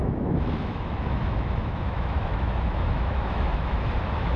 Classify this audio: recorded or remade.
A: remade